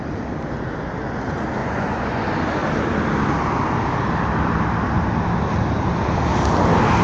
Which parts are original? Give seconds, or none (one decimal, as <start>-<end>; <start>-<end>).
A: 0.0-1.6; 2.2-7.0

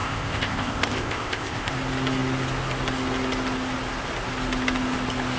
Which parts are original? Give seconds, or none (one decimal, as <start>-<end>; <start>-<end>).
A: 1.7-5.4

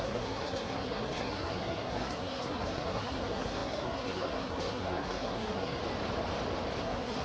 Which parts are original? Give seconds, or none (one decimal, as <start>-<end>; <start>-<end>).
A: 5.8-6.8

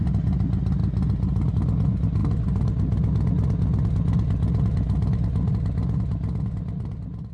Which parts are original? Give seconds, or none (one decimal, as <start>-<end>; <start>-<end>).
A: 0.0-7.3

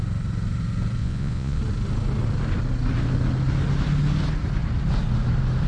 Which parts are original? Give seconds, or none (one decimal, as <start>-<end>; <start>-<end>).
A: 0.0-1.0; 1.6-5.7

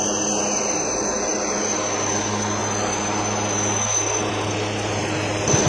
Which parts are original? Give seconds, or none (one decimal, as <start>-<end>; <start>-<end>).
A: 0.0-5.7

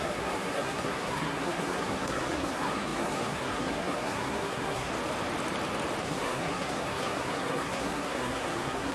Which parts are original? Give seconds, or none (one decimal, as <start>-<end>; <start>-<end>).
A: 4.9-6.0

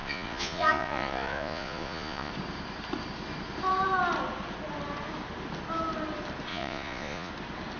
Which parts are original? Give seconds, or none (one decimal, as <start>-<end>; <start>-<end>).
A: 2.3-6.5; 7.3-7.8